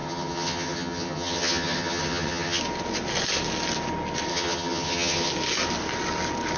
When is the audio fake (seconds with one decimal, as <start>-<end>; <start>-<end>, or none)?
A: 0.0-2.6; 4.3-5.3